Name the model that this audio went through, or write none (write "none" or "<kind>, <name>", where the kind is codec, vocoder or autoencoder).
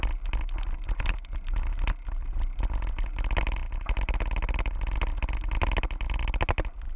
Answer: none